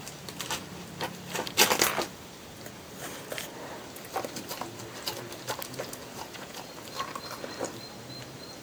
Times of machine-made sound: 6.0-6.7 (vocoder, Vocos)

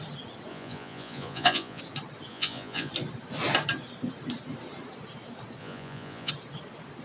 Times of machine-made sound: 0.5-1.8 (vocoder, Vocos); 2.3-2.9; 5.6-6.3

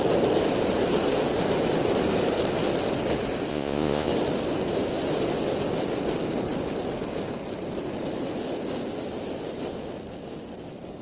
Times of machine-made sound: 3.5-4.1 (vocoder, Vocos)